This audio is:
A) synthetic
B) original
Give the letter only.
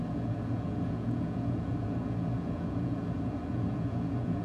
A